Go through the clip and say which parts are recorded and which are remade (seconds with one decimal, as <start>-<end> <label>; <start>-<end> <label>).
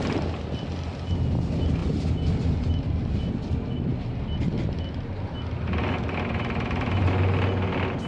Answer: 0.0-8.1 recorded